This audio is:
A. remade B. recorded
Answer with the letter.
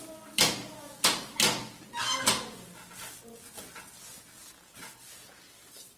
B